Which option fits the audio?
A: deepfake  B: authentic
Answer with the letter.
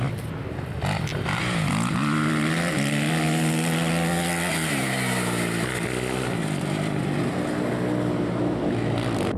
B